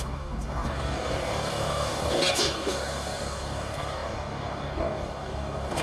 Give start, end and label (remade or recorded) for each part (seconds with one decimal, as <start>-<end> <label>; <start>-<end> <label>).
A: 0.0-5.8 remade

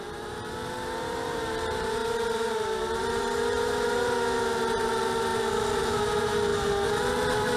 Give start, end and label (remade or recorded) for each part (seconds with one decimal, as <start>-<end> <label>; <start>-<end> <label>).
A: 0.0-7.6 remade

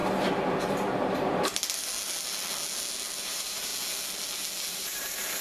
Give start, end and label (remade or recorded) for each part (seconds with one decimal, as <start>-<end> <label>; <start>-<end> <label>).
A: 0.0-3.2 recorded; 3.2-3.7 remade; 3.7-4.7 recorded; 4.7-5.4 remade

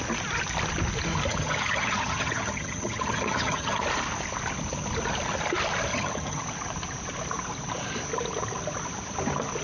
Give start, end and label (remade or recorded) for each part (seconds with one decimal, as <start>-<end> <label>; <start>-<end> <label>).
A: 0.0-1.3 recorded; 1.3-3.8 remade; 3.8-5.9 recorded; 5.9-6.4 remade; 6.4-9.6 recorded

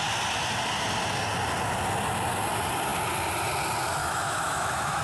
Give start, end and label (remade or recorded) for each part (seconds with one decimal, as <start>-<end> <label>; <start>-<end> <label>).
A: 0.0-4.0 recorded; 4.0-5.0 remade

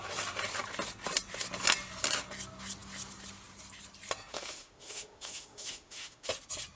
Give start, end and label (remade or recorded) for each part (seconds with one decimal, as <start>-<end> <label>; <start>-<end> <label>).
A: 0.0-4.3 recorded; 4.3-6.3 remade; 6.3-6.8 recorded

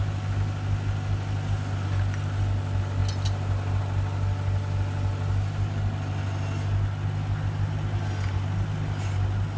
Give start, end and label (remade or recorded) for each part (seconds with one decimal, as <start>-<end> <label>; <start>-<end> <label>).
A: 0.0-9.6 recorded

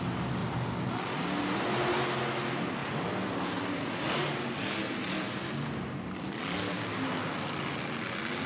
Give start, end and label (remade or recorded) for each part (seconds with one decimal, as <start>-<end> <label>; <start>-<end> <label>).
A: 0.0-8.5 recorded